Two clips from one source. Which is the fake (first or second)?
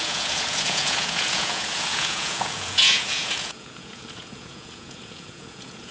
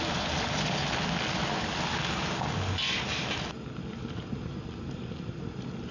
first